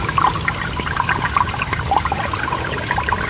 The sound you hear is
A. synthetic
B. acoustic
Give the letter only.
A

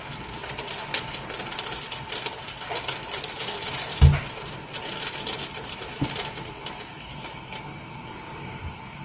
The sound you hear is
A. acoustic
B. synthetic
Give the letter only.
A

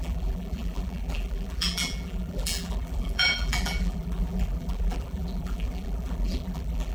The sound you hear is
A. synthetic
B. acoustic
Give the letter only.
A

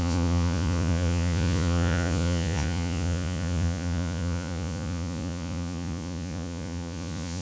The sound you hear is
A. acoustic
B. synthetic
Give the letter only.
B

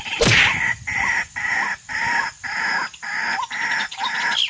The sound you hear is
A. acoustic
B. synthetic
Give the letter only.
B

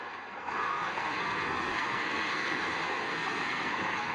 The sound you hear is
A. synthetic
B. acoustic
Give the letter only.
A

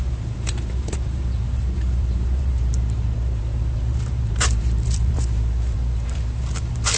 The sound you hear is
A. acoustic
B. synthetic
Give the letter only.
B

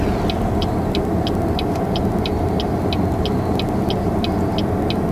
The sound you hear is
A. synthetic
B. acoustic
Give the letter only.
B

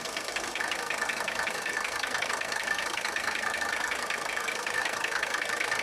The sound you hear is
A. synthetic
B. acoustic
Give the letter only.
A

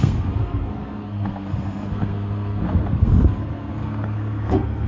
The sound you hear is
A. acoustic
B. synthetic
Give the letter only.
B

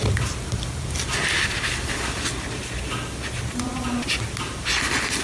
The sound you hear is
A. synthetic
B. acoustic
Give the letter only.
B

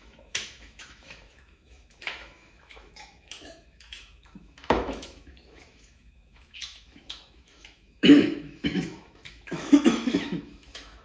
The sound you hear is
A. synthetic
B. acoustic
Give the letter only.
A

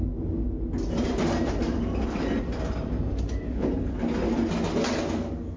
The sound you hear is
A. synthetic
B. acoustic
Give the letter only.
B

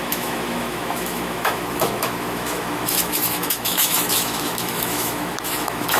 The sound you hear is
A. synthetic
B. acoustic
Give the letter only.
A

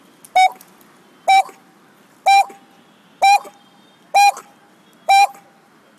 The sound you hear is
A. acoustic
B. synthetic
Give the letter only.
A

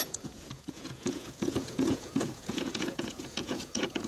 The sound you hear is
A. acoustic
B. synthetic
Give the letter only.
B